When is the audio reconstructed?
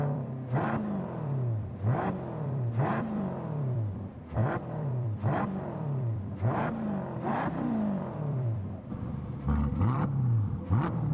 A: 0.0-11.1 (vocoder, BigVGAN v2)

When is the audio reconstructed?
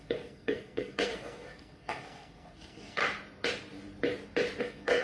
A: 0.0-3.0 (codec, SNAC); 4.6-5.0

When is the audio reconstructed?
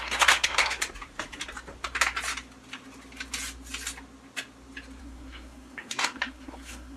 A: 0.0-0.8 (codec, SNAC); 5.0-7.0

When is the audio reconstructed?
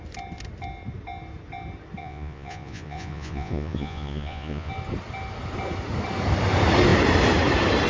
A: 2.0-4.7 (vocoder, Vocos)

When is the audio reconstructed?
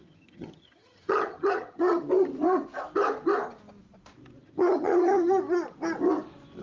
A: 0.0-2.1 (vocoder, HiFi-GAN); 4.4-5.3